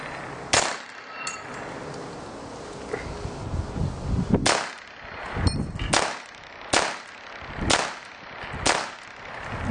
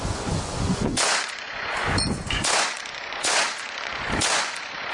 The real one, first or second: first